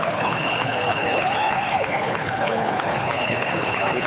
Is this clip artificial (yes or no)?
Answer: yes